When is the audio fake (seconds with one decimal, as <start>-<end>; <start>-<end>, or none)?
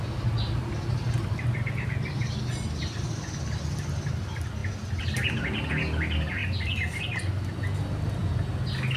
0.6-2.2